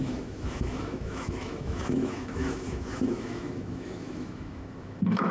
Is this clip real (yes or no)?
no